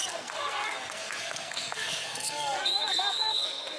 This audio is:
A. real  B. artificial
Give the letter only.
B